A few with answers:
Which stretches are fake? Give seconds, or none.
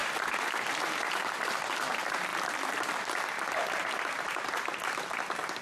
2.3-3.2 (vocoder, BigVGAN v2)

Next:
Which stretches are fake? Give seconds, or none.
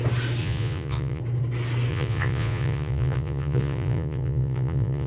0.4-1.2 (vocoder, Vocos); 1.9-5.1